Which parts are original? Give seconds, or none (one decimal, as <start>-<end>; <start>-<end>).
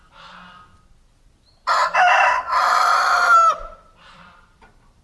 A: 0.0-1.8